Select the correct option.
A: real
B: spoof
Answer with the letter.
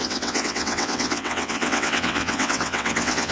B